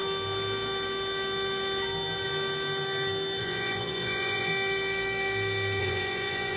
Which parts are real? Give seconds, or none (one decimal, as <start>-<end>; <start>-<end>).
0.0-3.4; 4.5-5.8